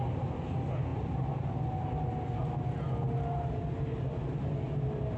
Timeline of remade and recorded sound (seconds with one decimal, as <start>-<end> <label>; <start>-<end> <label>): 0.0-5.2 recorded